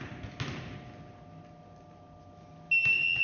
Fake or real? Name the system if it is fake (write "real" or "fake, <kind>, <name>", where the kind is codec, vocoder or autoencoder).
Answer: real